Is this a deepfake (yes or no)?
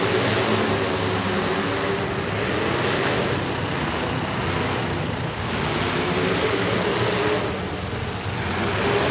no